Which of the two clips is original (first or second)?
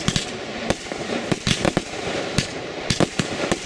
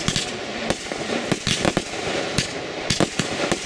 second